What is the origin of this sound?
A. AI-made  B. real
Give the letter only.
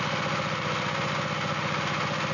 B